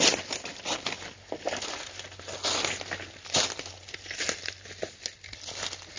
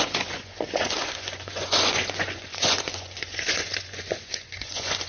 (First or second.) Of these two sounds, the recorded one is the first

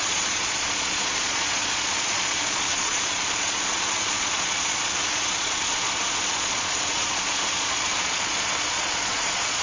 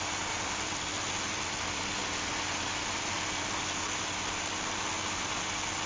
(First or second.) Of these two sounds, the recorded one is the second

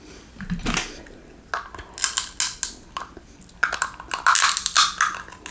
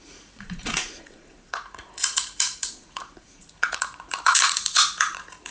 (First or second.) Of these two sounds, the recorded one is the first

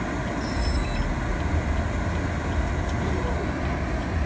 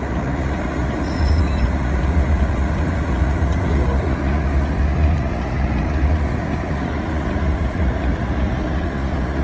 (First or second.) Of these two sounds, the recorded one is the first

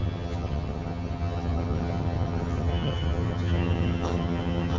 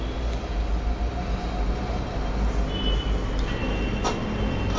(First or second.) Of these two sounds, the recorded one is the second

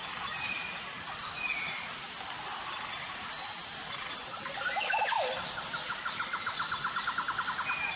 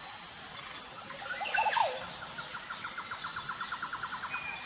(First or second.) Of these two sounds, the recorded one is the second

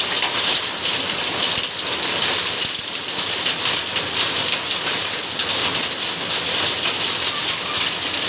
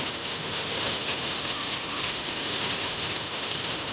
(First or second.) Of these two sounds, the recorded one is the first